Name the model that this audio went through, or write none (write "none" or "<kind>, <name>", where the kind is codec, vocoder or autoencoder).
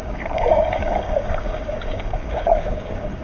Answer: codec, DAC